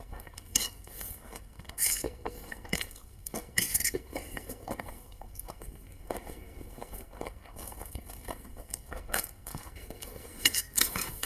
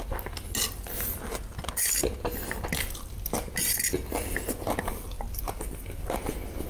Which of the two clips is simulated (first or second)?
first